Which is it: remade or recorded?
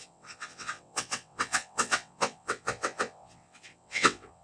remade